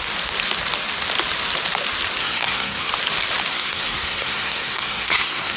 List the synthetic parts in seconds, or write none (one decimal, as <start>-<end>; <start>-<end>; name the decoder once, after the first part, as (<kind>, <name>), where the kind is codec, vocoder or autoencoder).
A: 2.2-2.9 (codec, SNAC); 3.5-5.6